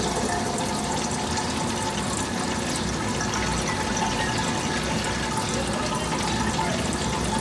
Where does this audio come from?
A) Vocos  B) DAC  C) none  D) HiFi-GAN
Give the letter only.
C